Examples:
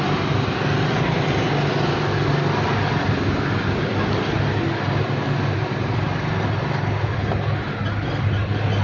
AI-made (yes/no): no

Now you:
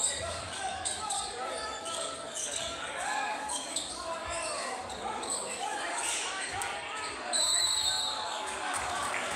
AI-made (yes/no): yes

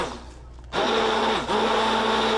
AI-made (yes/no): no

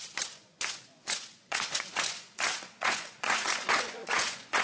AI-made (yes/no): yes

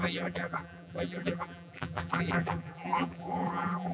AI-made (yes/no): yes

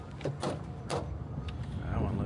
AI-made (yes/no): no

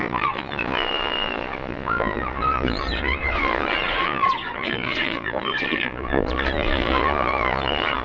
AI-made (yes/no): yes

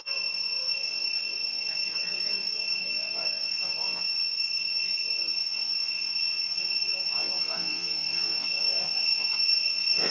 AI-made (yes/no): yes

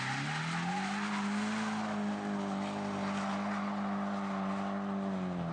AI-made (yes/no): no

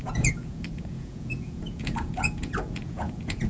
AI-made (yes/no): yes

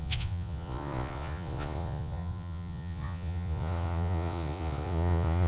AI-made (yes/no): yes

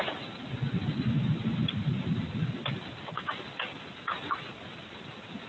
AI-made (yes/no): no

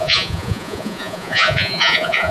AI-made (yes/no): yes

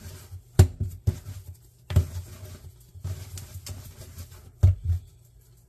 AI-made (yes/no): no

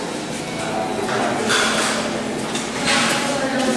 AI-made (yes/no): no